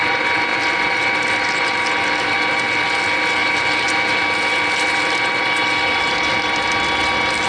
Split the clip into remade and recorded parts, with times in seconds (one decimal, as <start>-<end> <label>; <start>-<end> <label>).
0.0-0.5 recorded; 0.5-2.3 remade; 2.3-7.5 recorded